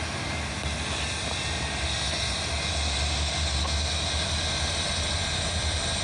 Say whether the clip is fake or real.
real